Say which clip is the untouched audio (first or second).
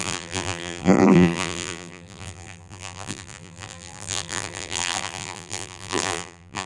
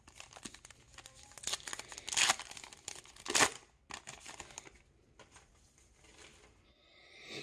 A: second